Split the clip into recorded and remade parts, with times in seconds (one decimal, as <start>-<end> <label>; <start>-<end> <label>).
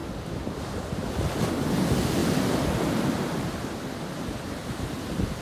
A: 0.0-1.4 remade; 1.4-5.4 recorded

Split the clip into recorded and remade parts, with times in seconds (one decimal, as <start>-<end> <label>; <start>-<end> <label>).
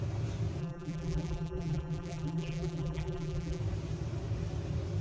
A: 0.0-0.6 recorded; 0.6-3.6 remade; 3.6-5.0 recorded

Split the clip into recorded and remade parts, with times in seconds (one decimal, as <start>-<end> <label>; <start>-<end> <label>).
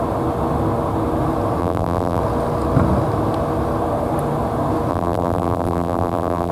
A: 0.0-1.6 recorded; 1.6-2.2 remade; 2.2-4.9 recorded; 4.9-6.5 remade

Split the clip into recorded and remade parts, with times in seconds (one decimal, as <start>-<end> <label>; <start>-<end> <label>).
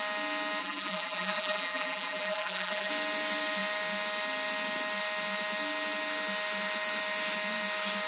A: 0.0-0.6 recorded; 0.6-2.9 remade; 2.9-8.1 recorded